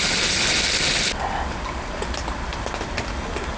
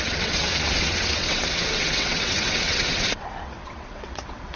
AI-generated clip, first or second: second